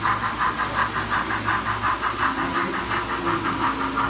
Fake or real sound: real